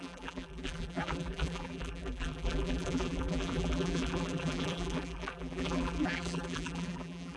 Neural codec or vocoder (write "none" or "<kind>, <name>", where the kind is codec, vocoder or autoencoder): vocoder, BigVGAN v2